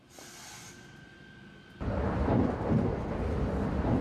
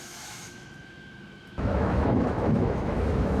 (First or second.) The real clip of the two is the first